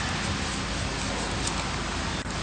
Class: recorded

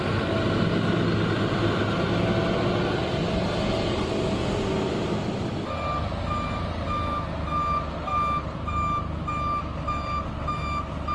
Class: recorded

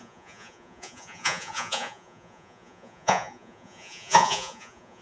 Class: remade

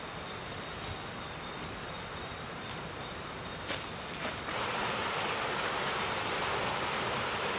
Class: recorded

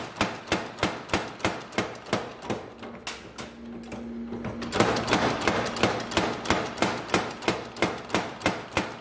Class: recorded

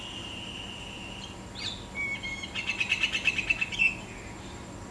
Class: recorded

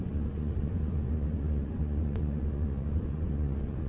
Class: remade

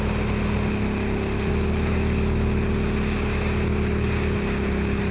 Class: recorded